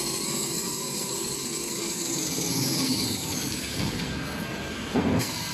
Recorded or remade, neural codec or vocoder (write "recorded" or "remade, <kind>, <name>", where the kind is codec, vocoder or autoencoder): remade, codec, SNAC